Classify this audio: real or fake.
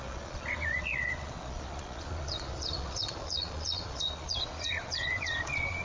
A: fake